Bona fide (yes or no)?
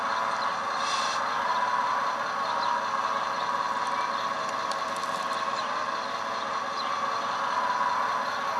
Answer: yes